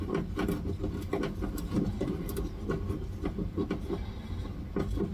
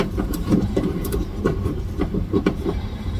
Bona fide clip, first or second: first